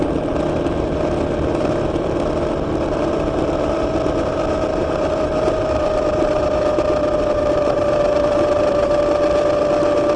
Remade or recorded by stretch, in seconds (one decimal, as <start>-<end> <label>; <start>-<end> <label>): 0.0-4.7 recorded; 4.7-9.0 remade; 9.0-10.2 recorded